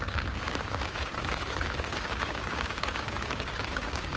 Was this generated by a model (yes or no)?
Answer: yes